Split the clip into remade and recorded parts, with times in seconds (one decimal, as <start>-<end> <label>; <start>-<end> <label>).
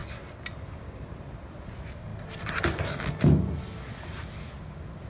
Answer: 0.0-5.1 recorded